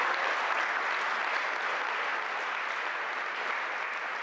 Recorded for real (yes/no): yes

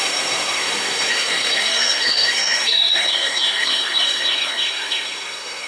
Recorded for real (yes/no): no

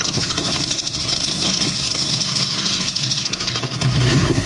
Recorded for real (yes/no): no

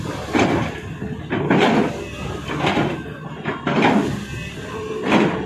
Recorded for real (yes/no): yes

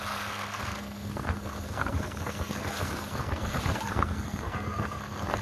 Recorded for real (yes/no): no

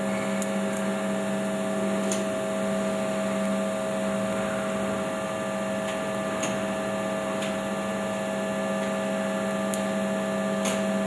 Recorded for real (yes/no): yes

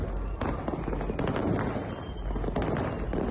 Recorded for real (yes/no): yes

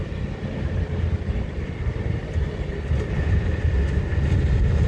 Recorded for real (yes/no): yes